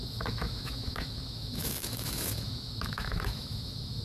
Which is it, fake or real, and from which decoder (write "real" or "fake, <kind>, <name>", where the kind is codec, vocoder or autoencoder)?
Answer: fake, autoencoder, DAC-VAE